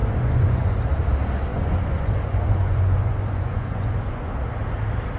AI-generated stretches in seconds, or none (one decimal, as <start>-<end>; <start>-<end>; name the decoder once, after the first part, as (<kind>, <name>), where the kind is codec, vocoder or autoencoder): 0.0-0.8 (vocoder, Vocos); 1.5-4.3